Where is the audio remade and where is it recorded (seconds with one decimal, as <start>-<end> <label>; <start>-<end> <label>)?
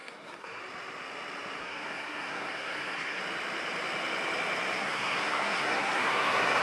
0.0-0.6 remade; 0.6-1.6 recorded; 1.6-3.2 remade; 3.2-4.8 recorded; 4.8-6.6 remade